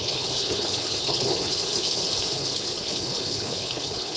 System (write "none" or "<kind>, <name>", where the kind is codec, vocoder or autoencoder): codec, HILCodec